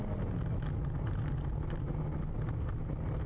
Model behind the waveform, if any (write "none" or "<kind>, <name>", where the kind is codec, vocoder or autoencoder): none